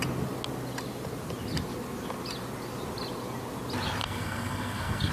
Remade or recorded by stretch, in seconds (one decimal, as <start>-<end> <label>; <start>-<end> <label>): 0.0-4.0 recorded; 4.0-5.1 remade